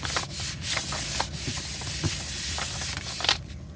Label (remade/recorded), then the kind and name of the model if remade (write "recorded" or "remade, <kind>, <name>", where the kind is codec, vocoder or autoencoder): recorded